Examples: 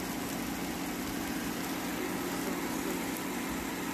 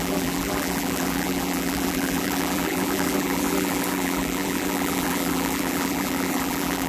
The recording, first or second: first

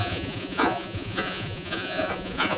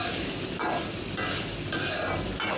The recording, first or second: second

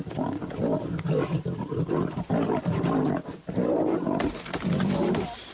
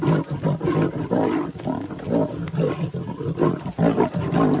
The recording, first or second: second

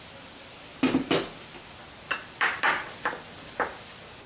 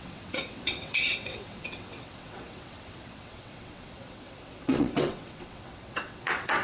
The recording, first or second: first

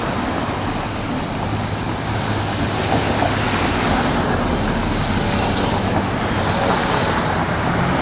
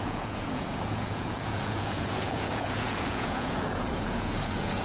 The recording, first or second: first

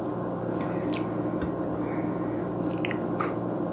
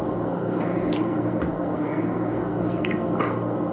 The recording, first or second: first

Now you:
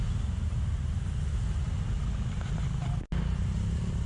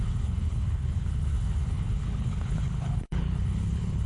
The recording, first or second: first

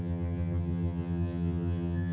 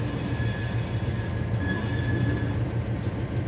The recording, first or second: second